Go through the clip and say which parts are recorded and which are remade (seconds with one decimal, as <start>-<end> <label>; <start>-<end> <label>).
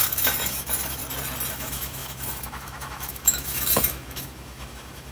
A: 0.0-1.0 remade; 1.0-1.5 recorded; 1.5-5.1 remade